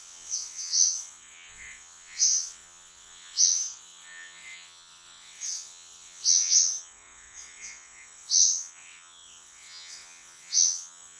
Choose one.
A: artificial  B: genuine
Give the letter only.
A